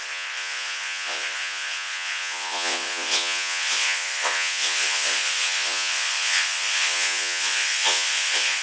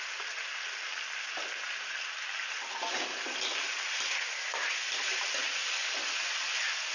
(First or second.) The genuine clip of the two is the second